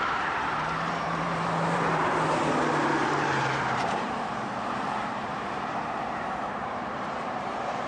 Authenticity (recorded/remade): remade